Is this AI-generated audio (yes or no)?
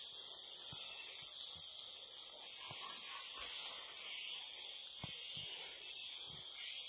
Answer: no